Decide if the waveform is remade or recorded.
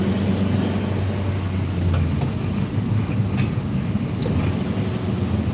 recorded